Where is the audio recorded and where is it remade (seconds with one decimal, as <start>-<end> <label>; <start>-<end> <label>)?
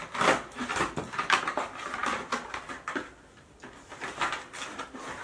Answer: 0.0-5.2 recorded